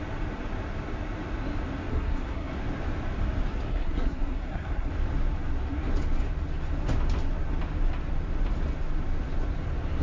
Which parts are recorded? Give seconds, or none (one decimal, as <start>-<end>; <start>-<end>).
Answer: 0.0-1.9; 2.5-3.7; 4.9-10.0

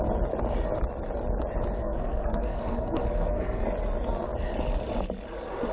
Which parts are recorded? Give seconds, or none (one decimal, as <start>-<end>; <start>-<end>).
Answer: 0.0-1.8; 3.6-5.7

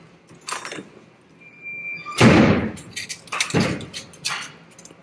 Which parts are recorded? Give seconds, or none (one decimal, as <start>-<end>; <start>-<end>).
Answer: 0.0-5.0

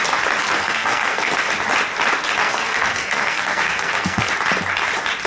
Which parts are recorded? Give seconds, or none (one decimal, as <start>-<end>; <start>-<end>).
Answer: 0.0-0.4; 1.4-2.4; 4.3-5.3

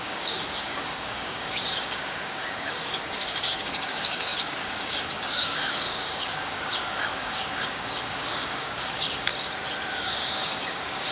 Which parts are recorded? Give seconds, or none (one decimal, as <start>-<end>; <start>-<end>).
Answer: 9.3-9.9